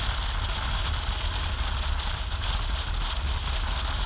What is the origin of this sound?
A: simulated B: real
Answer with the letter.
B